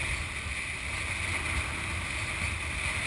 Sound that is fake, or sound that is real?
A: real